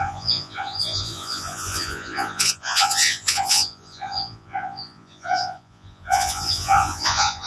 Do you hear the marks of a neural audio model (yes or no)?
yes